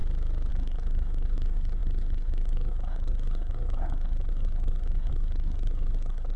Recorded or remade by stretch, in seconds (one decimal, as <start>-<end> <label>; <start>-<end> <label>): 0.0-0.5 recorded; 0.5-6.4 remade